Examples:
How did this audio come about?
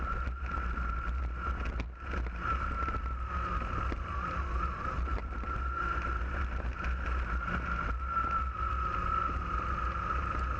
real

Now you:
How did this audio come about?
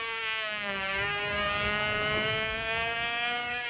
fake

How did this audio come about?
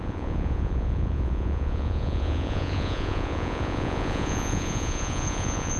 fake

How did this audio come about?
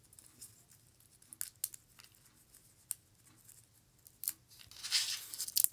real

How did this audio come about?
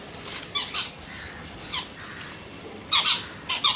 real